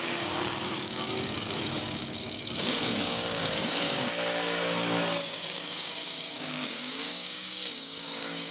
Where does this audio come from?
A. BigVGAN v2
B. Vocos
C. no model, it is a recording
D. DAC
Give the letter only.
D